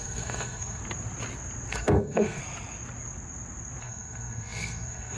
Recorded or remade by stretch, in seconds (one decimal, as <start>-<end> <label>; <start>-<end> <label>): 0.0-0.8 remade; 0.8-1.7 recorded; 1.7-2.4 remade; 2.4-3.8 recorded; 3.8-5.2 remade